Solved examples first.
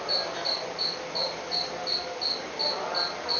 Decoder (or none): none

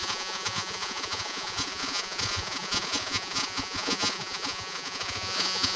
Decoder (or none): vocoder, Vocos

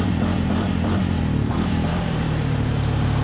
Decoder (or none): vocoder, BigVGAN v2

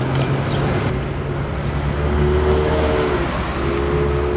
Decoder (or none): none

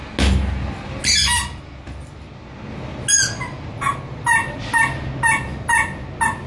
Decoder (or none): none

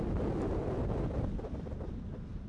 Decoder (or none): none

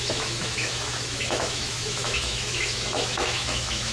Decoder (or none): autoencoder, DAC-VAE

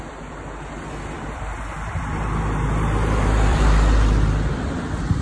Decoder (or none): vocoder, BigVGAN v2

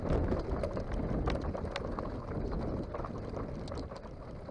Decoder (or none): none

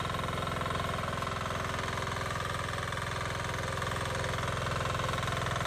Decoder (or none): none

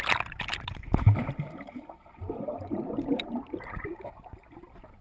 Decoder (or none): none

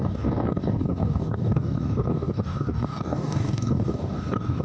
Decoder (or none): codec, DAC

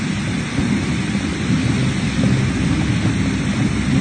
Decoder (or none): none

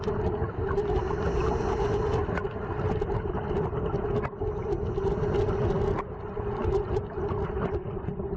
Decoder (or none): none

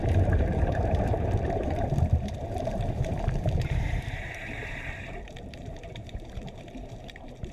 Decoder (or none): vocoder, BigVGAN v2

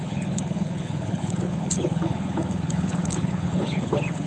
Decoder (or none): codec, HILCodec